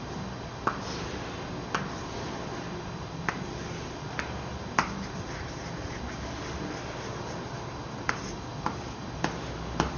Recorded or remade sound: recorded